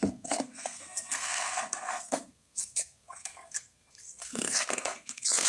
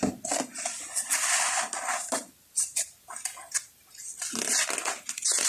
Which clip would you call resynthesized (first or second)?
first